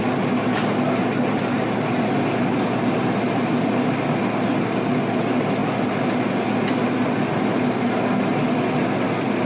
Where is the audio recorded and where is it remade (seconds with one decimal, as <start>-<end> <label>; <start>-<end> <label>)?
0.0-9.4 recorded